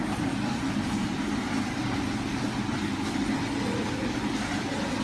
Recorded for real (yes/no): yes